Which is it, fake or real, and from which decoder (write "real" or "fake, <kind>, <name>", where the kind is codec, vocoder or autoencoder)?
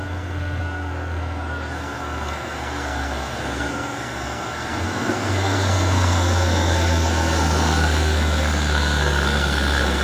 fake, codec, SNAC